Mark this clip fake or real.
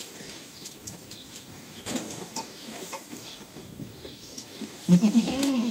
fake